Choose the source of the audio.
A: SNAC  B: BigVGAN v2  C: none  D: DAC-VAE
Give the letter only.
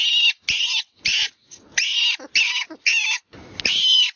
C